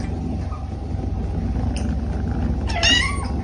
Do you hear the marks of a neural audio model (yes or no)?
no